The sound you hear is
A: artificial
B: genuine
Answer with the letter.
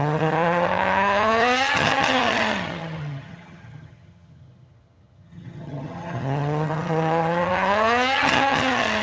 A